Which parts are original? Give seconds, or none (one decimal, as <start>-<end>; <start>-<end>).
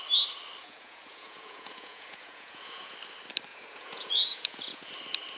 0.0-0.6; 2.9-3.5; 4.9-5.4